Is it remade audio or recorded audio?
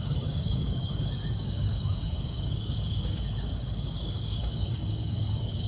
remade